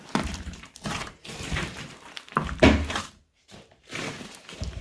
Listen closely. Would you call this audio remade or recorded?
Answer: remade